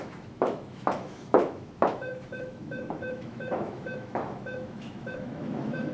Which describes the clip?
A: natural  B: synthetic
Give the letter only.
B